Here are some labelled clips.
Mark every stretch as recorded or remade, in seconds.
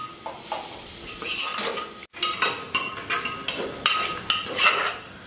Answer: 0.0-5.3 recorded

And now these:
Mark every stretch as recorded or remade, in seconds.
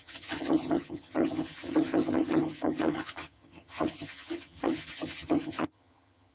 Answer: 0.0-6.3 remade